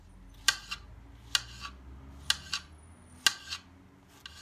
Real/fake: real